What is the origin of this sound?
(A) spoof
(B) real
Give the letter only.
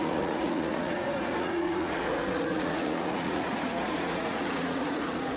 A